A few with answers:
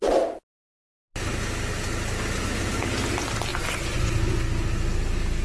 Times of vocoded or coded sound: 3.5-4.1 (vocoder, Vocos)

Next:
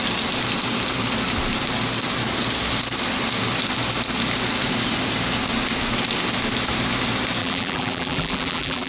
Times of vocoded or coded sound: 7.4-8.9 (vocoder, BigVGAN v2)

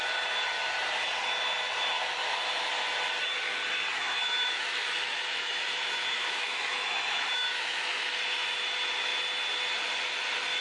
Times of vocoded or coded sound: 2.2-2.7 (autoencoder, DAC-VAE); 3.9-8.2

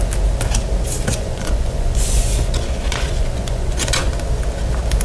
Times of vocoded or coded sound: 1.1-4.1 (vocoder, Vocos)